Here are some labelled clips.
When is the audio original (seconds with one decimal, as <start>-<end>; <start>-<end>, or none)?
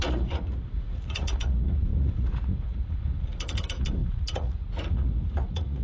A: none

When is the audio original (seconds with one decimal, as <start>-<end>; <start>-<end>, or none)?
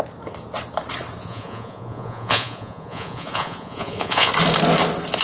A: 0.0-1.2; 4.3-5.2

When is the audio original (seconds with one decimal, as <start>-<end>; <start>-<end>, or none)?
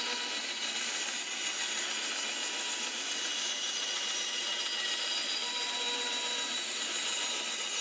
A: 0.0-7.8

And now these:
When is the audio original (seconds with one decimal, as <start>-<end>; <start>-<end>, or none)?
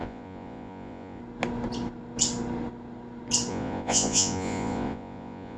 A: 1.2-3.5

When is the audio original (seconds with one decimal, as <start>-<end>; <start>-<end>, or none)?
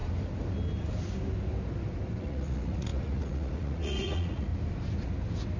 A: 0.0-2.2; 4.5-5.6